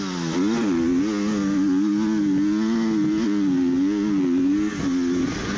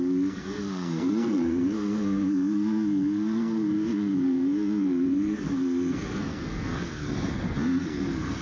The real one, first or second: first